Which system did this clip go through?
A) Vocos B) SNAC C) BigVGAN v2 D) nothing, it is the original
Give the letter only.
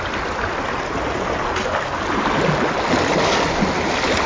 D